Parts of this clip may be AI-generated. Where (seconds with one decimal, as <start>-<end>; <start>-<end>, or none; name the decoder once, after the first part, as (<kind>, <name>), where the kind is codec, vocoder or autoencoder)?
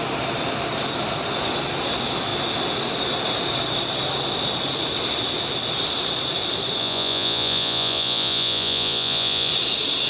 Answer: 6.8-9.5 (vocoder, Vocos)